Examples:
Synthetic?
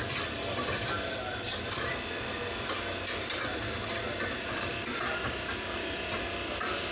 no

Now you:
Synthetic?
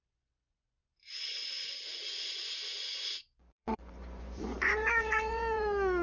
yes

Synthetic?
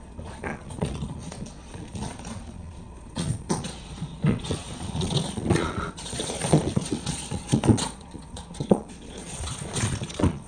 yes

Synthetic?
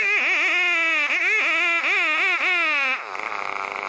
no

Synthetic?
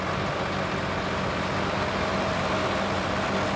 no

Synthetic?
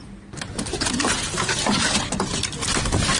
no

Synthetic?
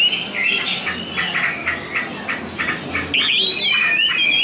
no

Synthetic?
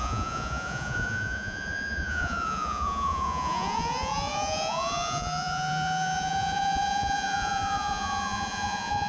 yes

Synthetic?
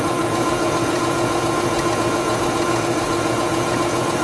yes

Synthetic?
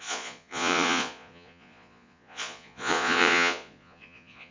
yes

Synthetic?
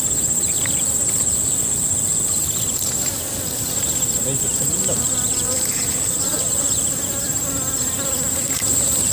no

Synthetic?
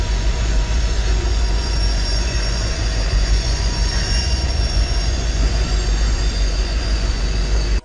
yes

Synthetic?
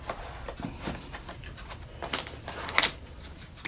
no